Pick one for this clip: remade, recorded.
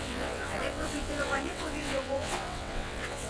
remade